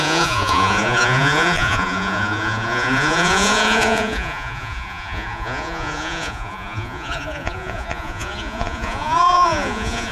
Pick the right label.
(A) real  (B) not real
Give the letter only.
B